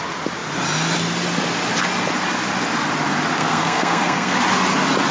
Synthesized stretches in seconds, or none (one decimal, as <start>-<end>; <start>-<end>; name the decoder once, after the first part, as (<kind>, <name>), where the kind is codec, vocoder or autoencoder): 3.4-4.4 (codec, SNAC)